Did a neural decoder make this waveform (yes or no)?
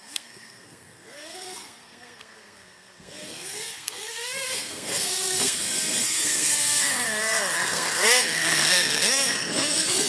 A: yes